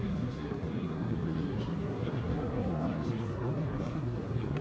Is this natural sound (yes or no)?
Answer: no